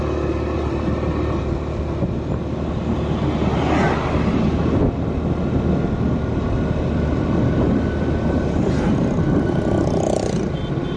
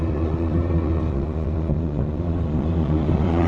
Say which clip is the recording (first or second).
first